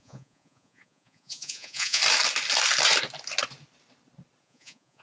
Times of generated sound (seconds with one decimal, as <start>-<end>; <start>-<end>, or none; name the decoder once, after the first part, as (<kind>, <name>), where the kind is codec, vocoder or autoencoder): 0.0-2.0 (vocoder, Vocos); 4.4-5.0